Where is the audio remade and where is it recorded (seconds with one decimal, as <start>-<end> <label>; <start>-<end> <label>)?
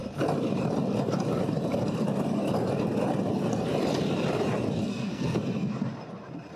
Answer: 0.0-4.9 recorded; 4.9-5.7 remade; 5.7-6.6 recorded